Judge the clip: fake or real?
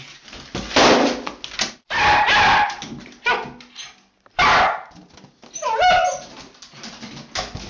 real